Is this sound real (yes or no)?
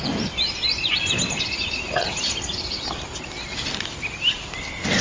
yes